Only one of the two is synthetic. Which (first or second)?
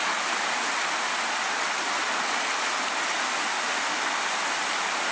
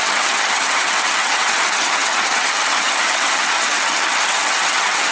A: second